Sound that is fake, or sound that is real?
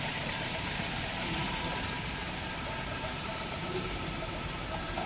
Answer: fake